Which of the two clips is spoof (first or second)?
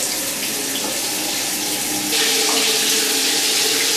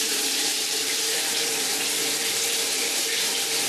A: second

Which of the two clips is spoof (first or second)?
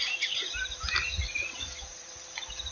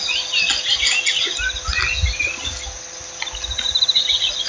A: first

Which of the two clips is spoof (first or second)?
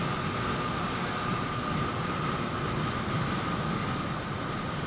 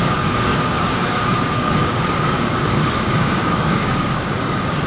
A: second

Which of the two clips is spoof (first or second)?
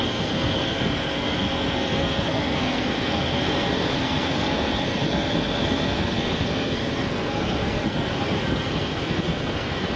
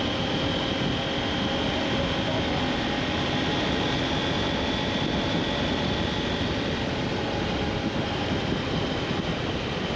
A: first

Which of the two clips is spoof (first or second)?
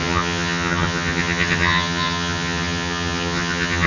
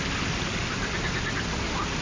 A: first